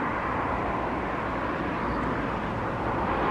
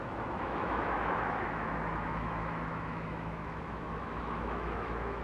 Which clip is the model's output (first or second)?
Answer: second